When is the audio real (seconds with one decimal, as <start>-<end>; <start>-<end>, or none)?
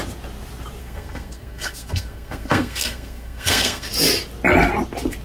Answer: 0.0-0.8; 3.9-5.2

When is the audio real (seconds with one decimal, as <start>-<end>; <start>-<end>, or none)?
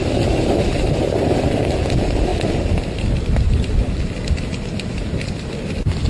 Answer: 0.0-6.1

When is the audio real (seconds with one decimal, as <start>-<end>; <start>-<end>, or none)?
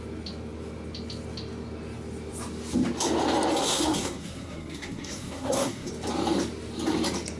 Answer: 0.0-3.6; 5.9-7.4